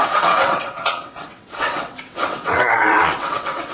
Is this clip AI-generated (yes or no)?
yes